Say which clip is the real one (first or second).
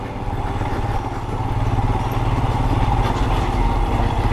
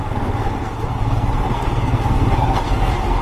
first